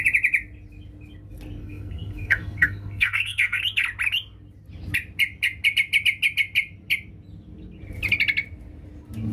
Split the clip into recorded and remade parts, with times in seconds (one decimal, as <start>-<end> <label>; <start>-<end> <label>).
0.0-1.6 recorded; 1.6-3.6 remade; 3.6-9.3 recorded